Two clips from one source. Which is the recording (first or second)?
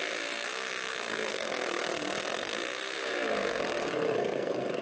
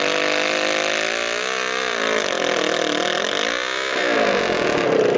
second